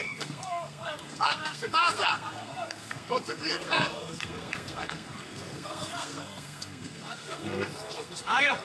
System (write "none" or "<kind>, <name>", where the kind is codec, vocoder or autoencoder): codec, SNAC